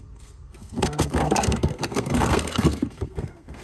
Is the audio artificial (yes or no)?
yes